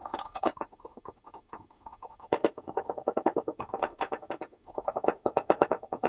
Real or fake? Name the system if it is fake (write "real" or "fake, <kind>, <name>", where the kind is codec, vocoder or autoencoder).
fake, autoencoder, DAC-VAE